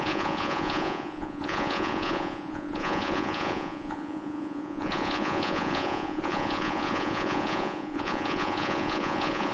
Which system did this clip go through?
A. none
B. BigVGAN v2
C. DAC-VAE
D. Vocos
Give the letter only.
D